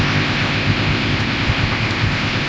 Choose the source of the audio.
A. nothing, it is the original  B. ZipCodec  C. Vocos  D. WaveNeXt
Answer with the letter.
B